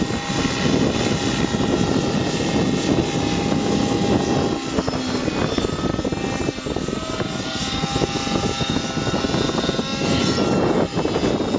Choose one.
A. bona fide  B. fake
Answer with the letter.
A